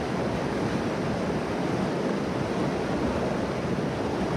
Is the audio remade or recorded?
recorded